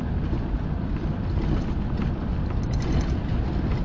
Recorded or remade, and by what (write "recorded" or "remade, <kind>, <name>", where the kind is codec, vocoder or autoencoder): recorded